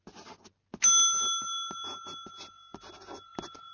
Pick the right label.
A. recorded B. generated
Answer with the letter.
A